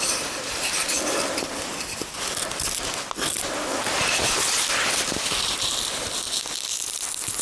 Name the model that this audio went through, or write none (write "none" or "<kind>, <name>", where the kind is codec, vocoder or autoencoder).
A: none